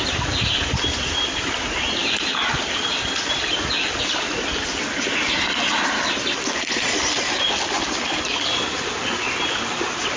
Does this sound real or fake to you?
real